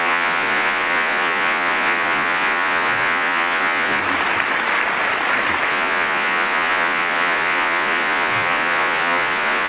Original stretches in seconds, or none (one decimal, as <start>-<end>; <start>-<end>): 4.0-5.7